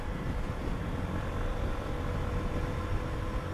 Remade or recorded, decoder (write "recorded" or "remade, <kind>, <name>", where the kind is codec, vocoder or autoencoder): recorded